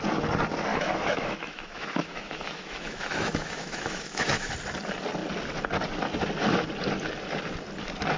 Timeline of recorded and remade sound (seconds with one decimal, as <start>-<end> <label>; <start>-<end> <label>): 0.0-0.7 recorded; 0.7-4.5 remade; 4.5-8.2 recorded